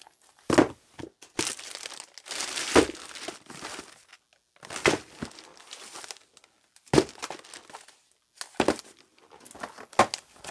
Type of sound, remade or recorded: recorded